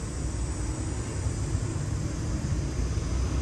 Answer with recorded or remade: recorded